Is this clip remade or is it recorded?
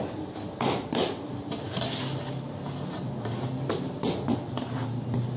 recorded